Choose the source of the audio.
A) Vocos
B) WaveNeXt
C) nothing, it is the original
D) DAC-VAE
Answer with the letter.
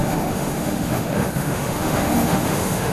D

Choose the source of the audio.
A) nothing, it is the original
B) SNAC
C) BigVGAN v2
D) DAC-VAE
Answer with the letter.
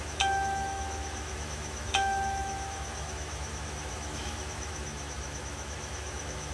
D